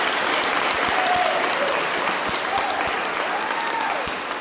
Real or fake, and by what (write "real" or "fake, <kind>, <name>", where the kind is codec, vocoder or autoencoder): real